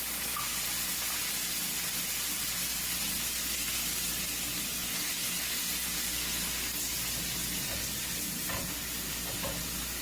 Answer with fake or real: real